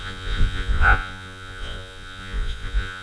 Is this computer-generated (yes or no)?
yes